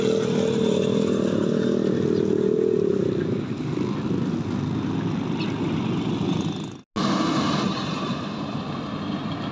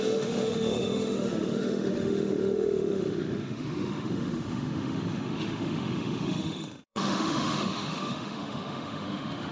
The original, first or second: first